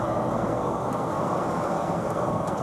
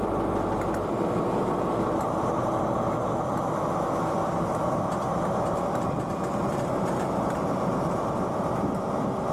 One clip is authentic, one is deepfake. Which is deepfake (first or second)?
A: first